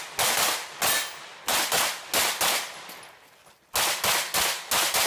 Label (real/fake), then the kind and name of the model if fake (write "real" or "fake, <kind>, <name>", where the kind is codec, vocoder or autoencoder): real